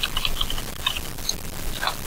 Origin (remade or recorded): recorded